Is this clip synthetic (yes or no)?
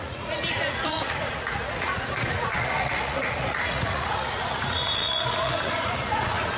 yes